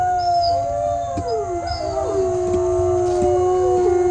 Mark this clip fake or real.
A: real